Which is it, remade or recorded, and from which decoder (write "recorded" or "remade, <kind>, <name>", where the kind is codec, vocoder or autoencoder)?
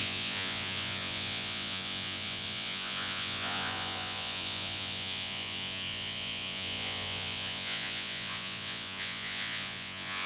remade, vocoder, Vocos